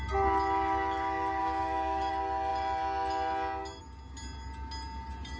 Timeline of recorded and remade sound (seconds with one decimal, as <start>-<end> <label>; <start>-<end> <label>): 0.0-1.4 recorded; 1.4-2.1 remade; 2.1-5.4 recorded